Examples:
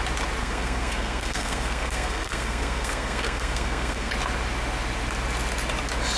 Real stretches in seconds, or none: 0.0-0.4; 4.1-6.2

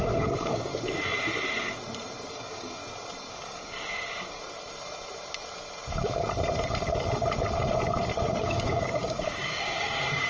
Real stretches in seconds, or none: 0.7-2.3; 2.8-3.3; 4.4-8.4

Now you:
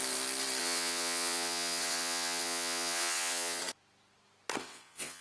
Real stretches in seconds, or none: 0.0-0.6; 3.6-4.6